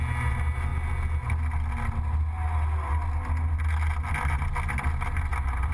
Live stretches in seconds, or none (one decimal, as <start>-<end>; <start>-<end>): 0.0-5.7